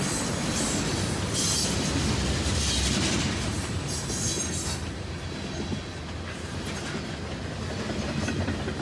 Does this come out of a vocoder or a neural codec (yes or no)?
no